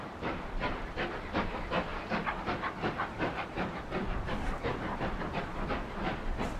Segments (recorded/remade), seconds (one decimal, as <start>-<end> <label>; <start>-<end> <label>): 0.0-1.9 recorded; 1.9-5.2 remade; 5.2-6.6 recorded

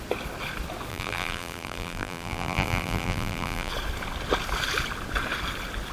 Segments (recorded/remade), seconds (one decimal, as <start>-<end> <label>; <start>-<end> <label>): 0.0-0.9 recorded; 0.9-3.7 remade; 3.7-5.9 recorded

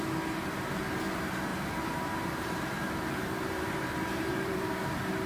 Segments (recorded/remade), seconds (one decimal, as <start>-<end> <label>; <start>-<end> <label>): 0.0-1.5 recorded; 1.5-4.7 remade; 4.7-5.3 recorded

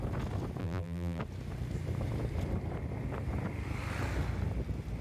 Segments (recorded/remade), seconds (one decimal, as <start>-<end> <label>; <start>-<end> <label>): 0.0-0.6 recorded; 0.6-1.2 remade; 1.2-5.0 recorded

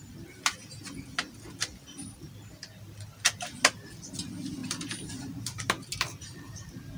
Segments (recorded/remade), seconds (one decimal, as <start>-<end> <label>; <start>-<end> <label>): 0.0-4.6 recorded; 4.6-5.4 remade; 5.4-7.0 recorded